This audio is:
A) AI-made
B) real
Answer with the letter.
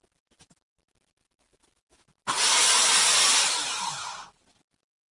B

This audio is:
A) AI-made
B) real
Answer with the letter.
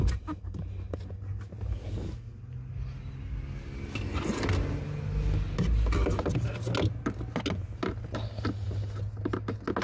B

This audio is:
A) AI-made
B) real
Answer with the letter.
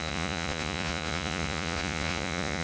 A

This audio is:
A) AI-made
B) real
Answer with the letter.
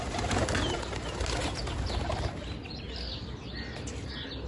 B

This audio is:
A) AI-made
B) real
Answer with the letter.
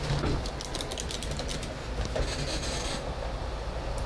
B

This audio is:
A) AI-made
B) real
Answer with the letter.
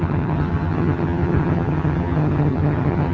A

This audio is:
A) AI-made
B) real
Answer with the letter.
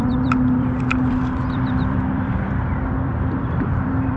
A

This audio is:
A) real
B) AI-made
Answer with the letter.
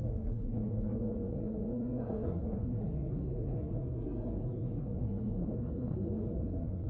B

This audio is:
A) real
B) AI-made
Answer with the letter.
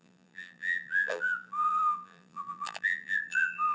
B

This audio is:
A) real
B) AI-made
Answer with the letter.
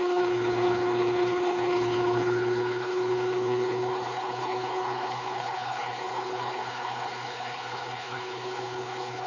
B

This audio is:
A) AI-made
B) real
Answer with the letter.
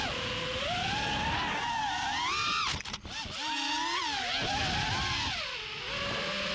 B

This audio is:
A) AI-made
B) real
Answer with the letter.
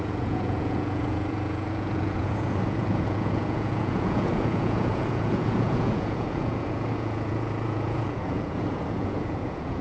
A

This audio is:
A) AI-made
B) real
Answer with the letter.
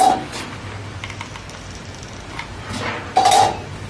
B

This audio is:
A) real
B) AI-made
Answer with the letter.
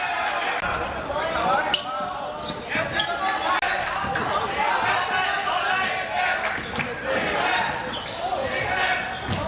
A